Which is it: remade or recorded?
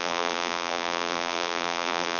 remade